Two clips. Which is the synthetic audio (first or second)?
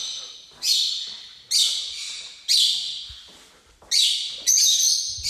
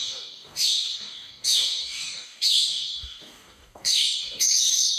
second